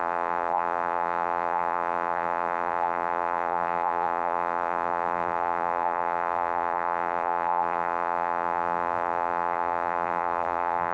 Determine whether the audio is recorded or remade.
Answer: remade